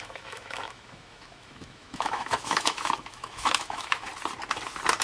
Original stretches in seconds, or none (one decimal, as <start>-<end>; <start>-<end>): 4.1-5.0